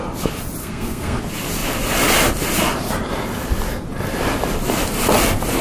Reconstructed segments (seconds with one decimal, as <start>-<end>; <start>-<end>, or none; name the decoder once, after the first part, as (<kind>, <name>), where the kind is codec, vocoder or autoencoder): 0.6-1.2 (codec, SNAC)